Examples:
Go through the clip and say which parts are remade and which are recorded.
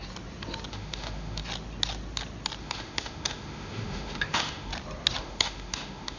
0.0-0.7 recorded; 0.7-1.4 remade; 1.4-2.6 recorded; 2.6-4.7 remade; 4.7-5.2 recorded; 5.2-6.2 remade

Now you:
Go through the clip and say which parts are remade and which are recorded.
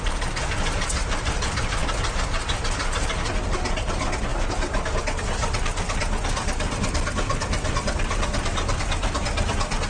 0.0-9.9 recorded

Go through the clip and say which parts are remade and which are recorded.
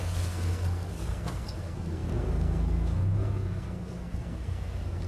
0.0-5.1 remade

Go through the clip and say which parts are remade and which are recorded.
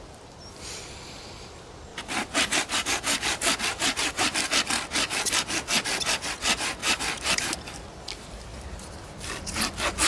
0.0-1.9 recorded; 1.9-4.5 remade; 4.5-6.8 recorded; 6.8-7.6 remade; 7.6-10.1 recorded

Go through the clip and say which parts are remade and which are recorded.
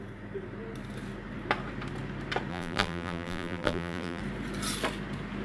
0.0-2.5 recorded; 2.5-4.2 remade; 4.2-5.4 recorded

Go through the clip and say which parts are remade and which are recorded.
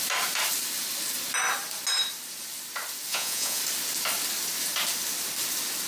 0.0-3.1 recorded; 3.1-3.6 remade; 3.6-5.9 recorded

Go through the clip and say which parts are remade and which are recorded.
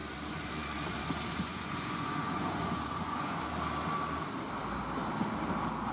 0.0-3.5 remade; 3.5-5.9 recorded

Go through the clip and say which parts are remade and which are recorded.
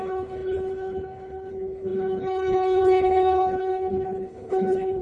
0.0-5.0 remade